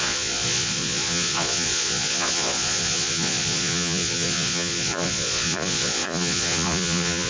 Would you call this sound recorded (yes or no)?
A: no